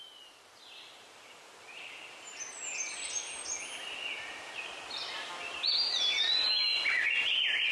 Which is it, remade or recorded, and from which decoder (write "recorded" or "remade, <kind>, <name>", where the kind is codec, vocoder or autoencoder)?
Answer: recorded